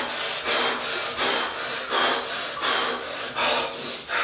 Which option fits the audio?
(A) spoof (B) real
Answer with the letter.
B